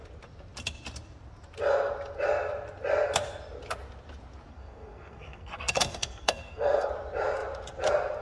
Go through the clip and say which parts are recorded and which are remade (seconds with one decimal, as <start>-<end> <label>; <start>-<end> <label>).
0.0-4.5 recorded; 4.5-6.9 remade; 6.9-8.2 recorded